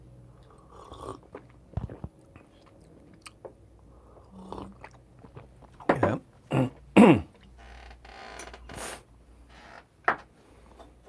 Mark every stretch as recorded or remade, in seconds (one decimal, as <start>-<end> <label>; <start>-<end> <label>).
0.0-11.1 recorded